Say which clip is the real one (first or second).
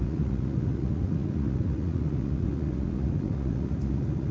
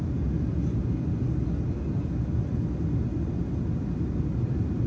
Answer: second